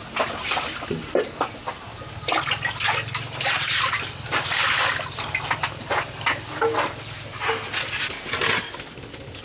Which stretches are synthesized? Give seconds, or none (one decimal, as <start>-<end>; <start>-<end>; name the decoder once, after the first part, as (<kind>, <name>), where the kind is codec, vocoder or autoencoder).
none